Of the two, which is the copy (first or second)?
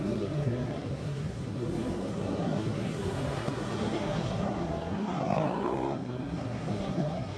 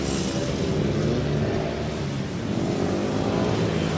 first